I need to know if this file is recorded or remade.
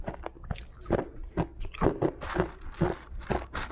recorded